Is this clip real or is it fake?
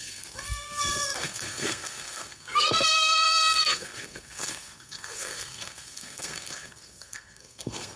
fake